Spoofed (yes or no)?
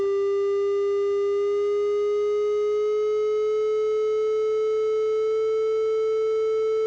no